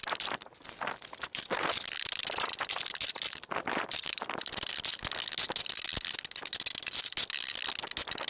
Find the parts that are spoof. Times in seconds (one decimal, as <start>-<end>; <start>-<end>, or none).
0.0-4.9